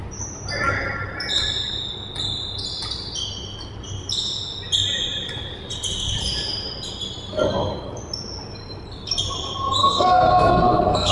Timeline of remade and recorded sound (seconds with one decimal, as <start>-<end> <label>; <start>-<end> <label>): 0.0-9.8 recorded; 9.8-11.1 remade